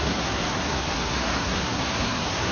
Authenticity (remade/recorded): remade